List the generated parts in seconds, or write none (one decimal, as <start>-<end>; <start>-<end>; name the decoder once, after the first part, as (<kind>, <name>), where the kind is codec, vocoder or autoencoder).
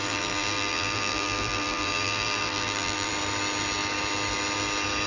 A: 0.0-3.1 (vocoder, BigVGAN v2)